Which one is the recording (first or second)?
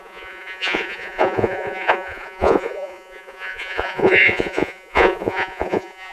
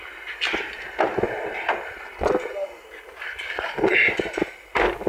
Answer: second